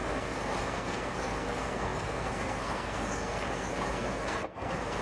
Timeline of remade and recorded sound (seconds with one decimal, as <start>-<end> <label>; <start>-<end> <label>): 0.0-5.0 remade